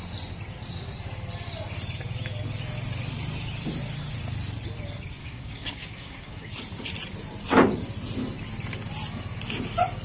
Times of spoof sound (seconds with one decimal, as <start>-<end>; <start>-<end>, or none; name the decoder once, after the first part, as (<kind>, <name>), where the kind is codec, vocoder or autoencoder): 5.2-6.5 (codec, DAC)